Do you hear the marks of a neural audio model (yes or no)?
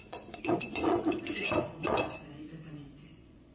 yes